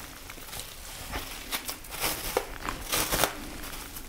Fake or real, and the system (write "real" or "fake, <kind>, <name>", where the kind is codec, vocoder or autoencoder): real